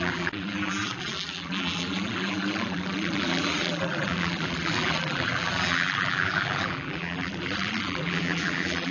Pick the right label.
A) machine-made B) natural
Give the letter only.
A